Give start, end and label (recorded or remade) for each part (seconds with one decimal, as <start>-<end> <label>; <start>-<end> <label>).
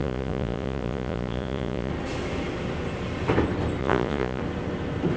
0.0-1.9 remade; 1.9-3.8 recorded; 3.8-4.4 remade; 4.4-5.2 recorded